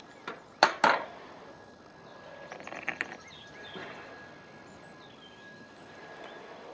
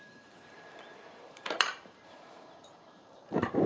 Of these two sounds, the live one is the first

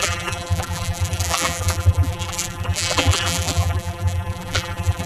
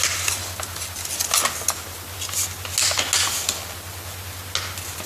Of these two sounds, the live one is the second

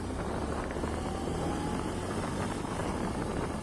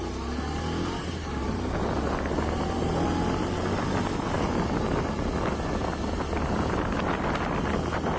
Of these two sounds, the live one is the second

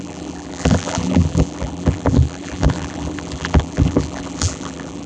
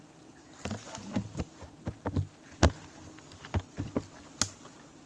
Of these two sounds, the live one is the second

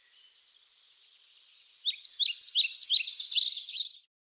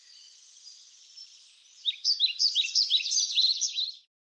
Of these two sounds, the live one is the first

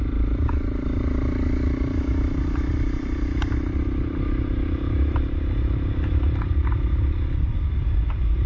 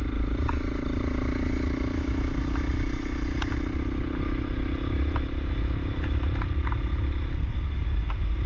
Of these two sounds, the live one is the second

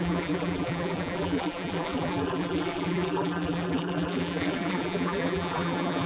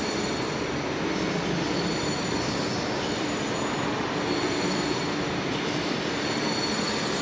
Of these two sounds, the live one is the second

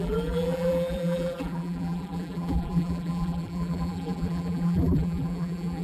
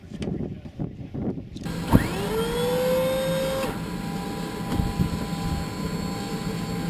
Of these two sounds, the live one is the second